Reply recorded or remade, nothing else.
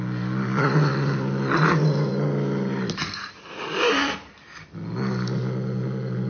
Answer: recorded